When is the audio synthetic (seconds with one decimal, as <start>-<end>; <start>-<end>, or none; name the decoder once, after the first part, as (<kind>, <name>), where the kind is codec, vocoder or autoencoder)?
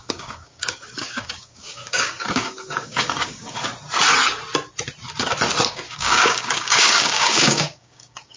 0.0-3.6 (codec, DAC); 5.7-8.4